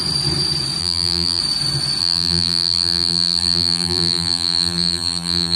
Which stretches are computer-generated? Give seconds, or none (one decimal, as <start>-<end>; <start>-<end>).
0.8-1.4; 2.0-5.6